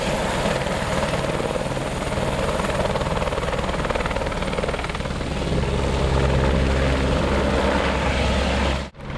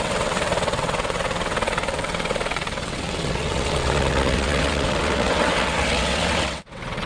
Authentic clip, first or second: first